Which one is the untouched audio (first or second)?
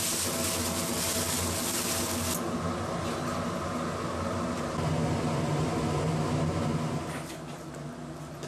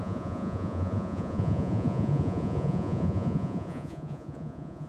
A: first